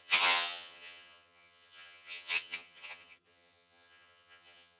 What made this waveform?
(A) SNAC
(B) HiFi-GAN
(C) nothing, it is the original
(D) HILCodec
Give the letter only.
B